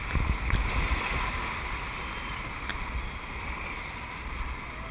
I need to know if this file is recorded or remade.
recorded